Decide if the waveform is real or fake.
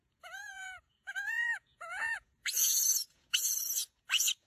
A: fake